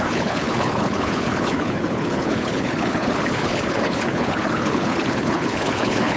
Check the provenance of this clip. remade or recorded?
remade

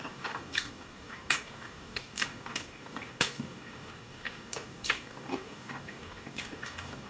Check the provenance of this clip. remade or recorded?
remade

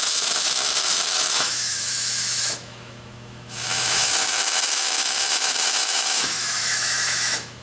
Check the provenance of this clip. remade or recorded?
remade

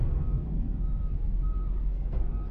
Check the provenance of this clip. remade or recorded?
remade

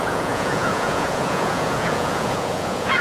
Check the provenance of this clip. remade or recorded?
remade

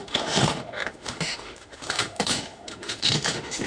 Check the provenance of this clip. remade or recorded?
remade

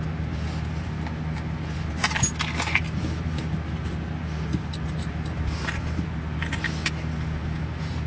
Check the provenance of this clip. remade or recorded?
recorded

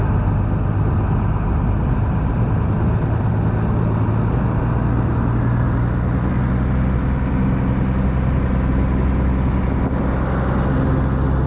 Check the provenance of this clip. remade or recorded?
recorded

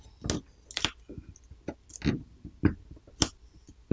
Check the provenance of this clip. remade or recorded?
recorded